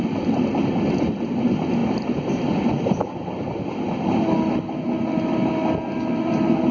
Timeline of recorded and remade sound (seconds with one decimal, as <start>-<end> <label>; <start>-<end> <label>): 0.0-6.7 recorded